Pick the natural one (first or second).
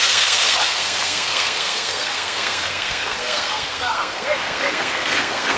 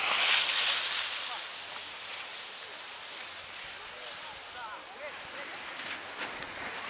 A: second